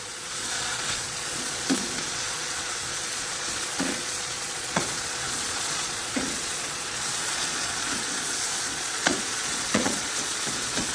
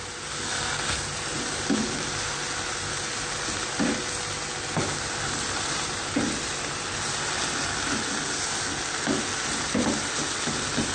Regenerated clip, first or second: first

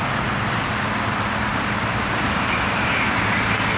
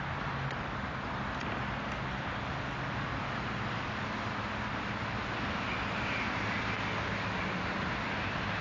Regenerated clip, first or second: first